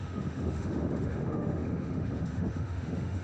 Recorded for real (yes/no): no